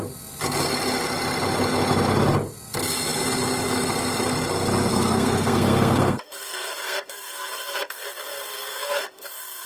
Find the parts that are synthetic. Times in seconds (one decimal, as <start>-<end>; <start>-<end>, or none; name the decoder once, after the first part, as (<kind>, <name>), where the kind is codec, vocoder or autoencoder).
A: 4.9-9.7 (codec, SNAC)